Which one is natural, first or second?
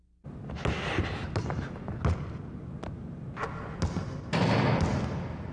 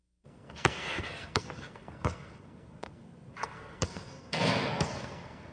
first